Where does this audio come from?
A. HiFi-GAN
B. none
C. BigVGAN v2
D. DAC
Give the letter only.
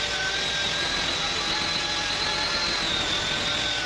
B